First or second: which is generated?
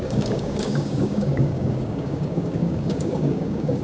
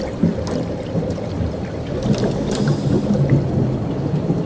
first